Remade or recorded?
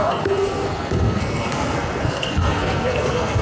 remade